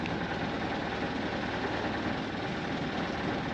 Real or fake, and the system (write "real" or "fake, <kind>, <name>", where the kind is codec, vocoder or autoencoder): real